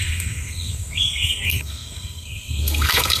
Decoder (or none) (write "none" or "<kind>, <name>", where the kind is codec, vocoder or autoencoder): codec, SNAC